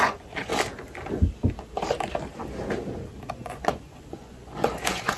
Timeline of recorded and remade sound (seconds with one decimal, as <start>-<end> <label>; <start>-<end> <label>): 0.0-0.5 remade; 0.5-3.3 recorded; 3.3-5.2 remade